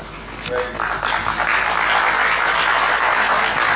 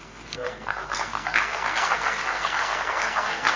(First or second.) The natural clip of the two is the first